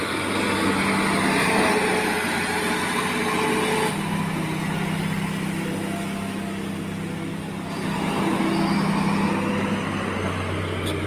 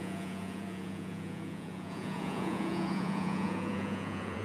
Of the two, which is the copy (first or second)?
second